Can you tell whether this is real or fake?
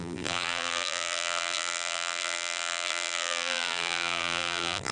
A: fake